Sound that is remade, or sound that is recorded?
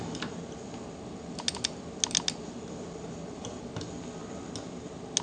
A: recorded